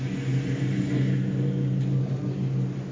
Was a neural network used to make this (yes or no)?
no